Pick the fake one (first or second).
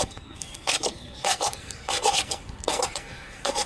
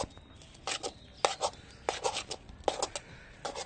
first